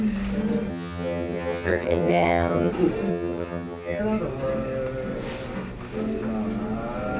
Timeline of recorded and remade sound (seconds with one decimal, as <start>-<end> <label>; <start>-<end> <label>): 0.0-0.7 recorded; 0.7-2.7 remade; 2.7-3.1 recorded; 3.1-4.0 remade; 4.0-7.2 recorded